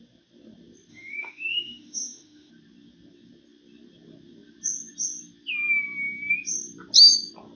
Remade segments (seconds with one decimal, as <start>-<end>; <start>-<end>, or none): 0.9-2.5